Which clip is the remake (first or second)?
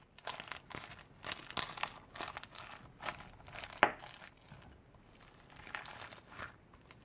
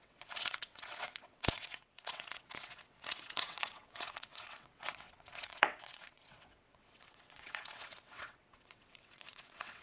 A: second